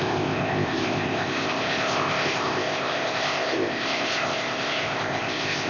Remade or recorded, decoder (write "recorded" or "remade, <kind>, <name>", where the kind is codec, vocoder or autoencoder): remade, codec, ZipCodec